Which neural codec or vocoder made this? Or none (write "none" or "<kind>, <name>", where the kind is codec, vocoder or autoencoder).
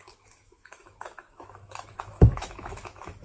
autoencoder, DAC-VAE